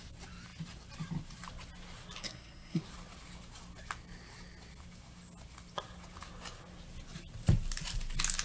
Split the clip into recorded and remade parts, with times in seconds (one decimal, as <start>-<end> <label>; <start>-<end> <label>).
0.0-2.2 recorded; 2.2-2.8 remade; 2.8-8.4 recorded